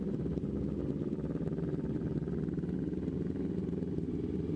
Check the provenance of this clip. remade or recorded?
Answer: recorded